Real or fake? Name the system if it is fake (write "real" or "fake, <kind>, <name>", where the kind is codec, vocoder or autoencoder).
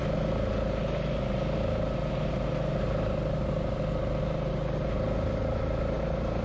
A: real